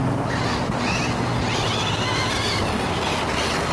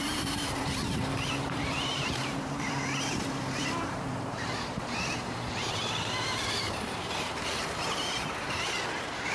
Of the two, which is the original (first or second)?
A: first